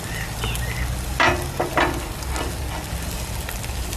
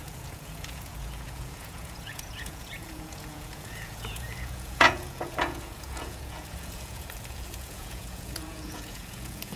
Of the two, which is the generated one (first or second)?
second